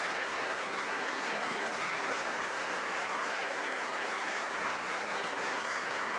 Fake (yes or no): yes